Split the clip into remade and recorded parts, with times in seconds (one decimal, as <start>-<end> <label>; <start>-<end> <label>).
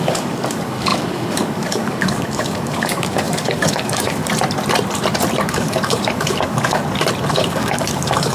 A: 0.0-4.2 remade; 4.2-5.5 recorded; 5.5-6.8 remade; 6.8-7.3 recorded; 7.3-8.3 remade